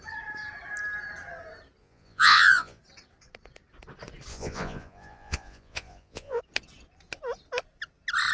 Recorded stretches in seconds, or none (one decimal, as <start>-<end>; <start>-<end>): 0.0-1.8; 2.8-4.3; 6.4-8.3